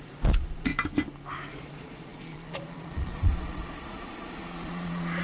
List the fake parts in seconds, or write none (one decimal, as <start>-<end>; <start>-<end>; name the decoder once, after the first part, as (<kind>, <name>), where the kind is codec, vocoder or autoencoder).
0.0-0.7 (vocoder, Vocos); 1.5-5.2